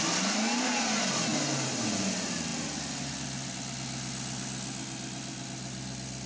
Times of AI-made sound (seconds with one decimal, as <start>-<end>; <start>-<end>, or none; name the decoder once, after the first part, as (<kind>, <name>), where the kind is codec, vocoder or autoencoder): none